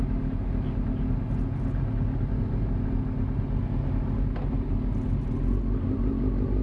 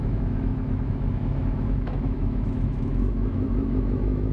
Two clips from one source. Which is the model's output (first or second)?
second